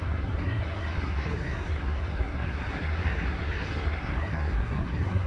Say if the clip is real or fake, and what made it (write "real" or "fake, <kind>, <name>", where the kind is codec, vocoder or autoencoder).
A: fake, codec, SNAC